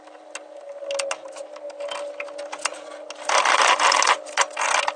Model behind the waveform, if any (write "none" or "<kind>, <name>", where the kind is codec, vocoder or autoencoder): none